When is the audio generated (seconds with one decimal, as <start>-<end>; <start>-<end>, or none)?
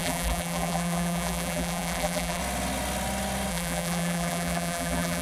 0.0-2.4; 3.5-5.2